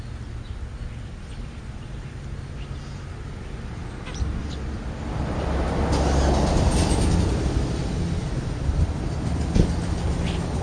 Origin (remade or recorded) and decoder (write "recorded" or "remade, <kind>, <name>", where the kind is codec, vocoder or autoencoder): recorded